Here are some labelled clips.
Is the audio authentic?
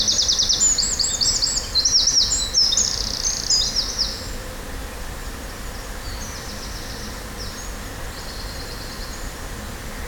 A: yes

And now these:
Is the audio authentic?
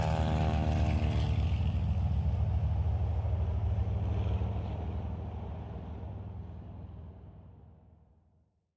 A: yes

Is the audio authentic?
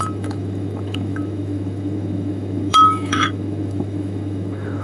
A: no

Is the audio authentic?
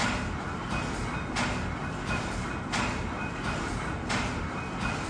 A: yes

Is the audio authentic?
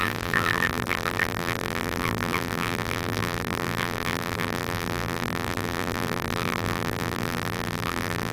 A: no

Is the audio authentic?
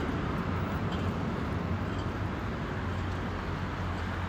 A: yes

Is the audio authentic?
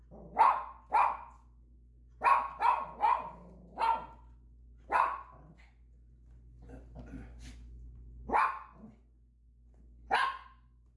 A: yes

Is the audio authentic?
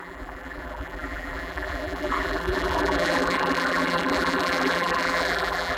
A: no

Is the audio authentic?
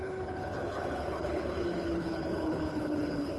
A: no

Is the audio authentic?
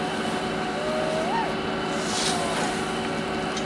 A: yes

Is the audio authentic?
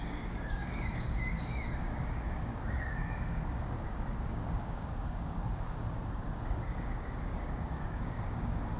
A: no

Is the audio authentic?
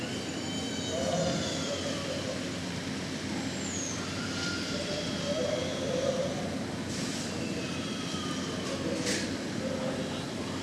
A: yes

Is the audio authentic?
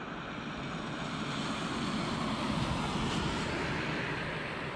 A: yes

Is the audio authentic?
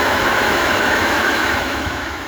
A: no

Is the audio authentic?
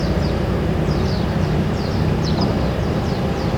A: no